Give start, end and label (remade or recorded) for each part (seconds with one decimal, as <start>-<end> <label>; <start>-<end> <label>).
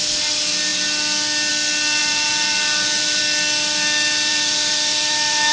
0.0-2.0 recorded; 2.0-3.2 remade; 3.2-4.3 recorded; 4.3-5.5 remade